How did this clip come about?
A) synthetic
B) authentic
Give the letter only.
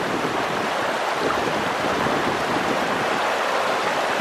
B